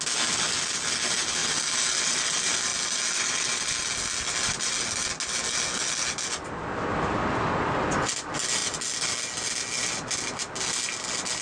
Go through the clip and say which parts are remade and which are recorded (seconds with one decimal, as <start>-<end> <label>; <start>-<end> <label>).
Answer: 0.0-11.4 recorded